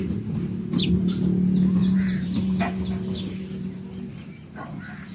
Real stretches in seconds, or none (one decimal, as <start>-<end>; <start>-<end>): 0.0-1.8; 2.6-5.1